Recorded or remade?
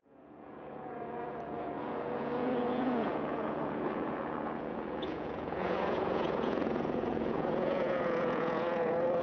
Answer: remade